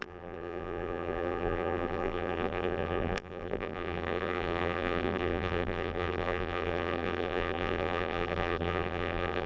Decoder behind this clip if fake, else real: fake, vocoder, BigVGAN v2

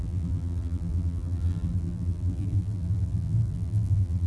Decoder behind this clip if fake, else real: fake, vocoder, BigVGAN v2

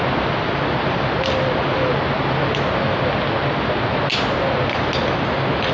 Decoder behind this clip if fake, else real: real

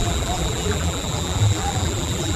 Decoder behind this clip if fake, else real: fake, vocoder, BigVGAN v2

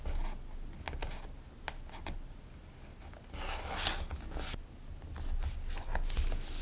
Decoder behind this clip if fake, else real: real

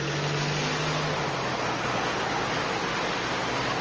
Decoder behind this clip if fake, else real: real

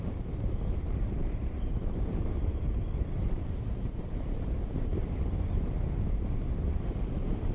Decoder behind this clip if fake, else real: fake, vocoder, BigVGAN v2